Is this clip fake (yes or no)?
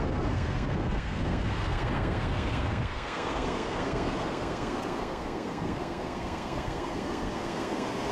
yes